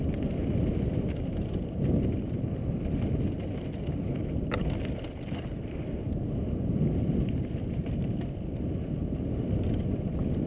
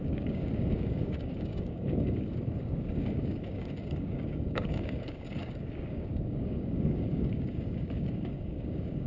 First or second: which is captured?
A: first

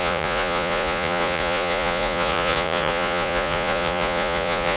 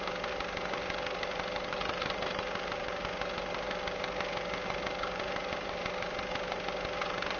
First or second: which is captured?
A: second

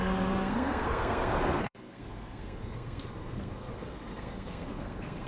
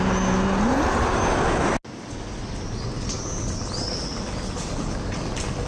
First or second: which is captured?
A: second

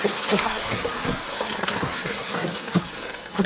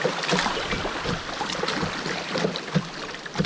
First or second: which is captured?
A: second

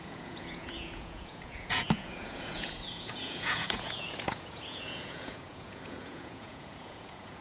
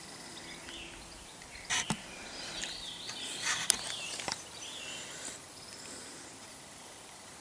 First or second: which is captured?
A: second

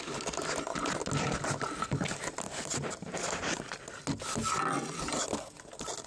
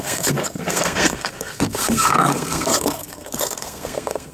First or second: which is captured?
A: first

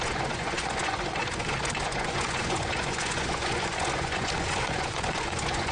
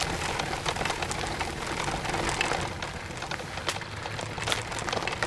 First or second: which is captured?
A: second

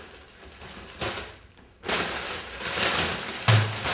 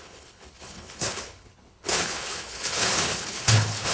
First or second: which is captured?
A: first